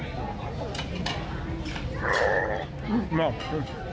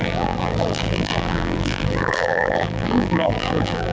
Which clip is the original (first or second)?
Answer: first